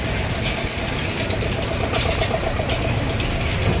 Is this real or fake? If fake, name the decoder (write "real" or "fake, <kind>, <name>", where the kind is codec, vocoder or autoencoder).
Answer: real